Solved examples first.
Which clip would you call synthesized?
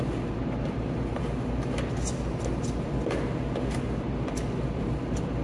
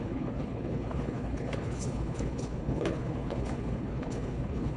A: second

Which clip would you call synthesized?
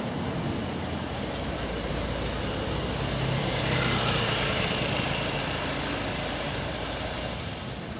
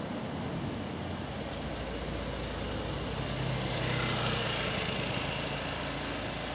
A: first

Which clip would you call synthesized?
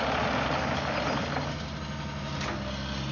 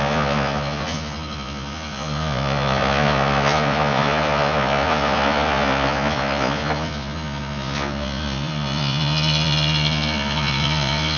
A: second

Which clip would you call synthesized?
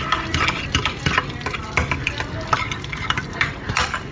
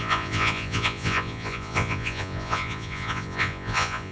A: second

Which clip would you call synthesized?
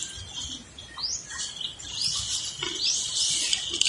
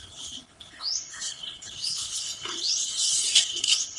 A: second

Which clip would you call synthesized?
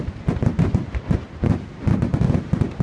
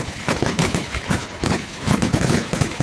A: second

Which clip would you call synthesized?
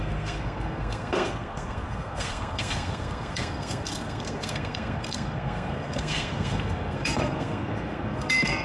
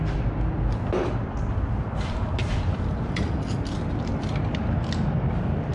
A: first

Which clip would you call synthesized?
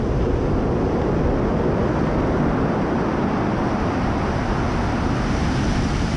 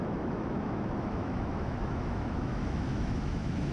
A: second